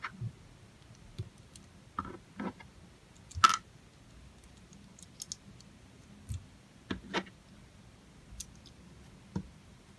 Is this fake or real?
real